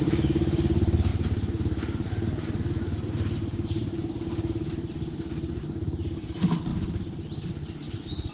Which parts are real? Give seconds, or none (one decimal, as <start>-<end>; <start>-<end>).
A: 6.7-8.3